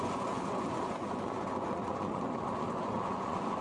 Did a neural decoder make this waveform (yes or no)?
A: yes